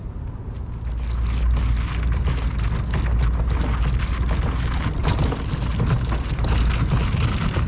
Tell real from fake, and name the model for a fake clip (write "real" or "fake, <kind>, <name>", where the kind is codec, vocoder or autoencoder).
real